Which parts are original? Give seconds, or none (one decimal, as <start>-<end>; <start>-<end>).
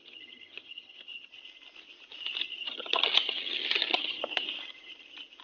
1.3-2.6; 4.2-5.4